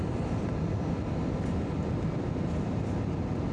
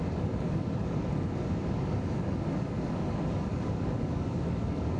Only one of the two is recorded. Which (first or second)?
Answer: first